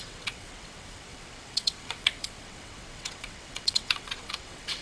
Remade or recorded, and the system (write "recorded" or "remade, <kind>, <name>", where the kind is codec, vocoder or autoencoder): remade, vocoder, WaveNeXt